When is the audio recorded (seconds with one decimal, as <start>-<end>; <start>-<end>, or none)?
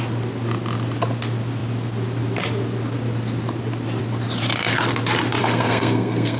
0.0-5.4